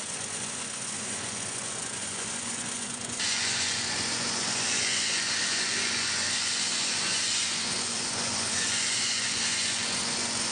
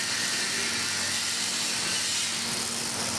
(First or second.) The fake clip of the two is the first